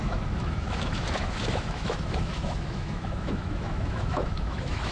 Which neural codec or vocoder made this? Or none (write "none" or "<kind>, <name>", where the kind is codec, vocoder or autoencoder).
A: autoencoder, DAC-VAE